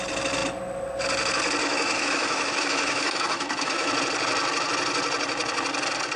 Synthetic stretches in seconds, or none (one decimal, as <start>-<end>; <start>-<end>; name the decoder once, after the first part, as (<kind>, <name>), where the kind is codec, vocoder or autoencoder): 1.6-3.9 (autoencoder, DAC-VAE)